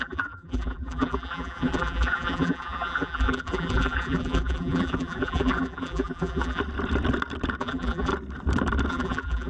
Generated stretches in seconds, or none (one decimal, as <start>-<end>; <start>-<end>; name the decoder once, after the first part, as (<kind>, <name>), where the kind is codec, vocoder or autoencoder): 0.0-6.6 (vocoder, BigVGAN v2); 7.6-8.1; 8.9-9.5